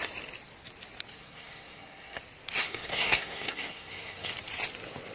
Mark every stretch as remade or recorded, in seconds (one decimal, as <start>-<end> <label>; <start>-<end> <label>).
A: 0.0-1.1 recorded; 1.1-2.2 remade; 2.2-2.6 recorded; 2.6-4.3 remade; 4.3-5.1 recorded